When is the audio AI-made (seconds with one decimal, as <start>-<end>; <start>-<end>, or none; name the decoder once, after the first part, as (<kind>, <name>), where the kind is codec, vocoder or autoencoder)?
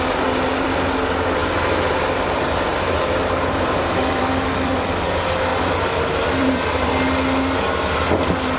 1.4-4.9 (vocoder, BigVGAN v2); 6.4-6.9